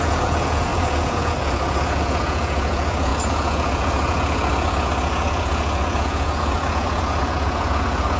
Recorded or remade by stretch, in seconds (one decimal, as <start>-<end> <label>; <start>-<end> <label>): 0.0-8.2 remade